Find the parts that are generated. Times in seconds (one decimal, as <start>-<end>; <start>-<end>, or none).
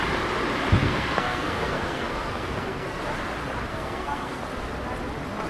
0.8-3.0; 3.7-4.4